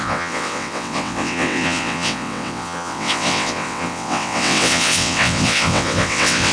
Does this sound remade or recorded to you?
remade